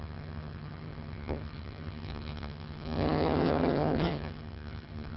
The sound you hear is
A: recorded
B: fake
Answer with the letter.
B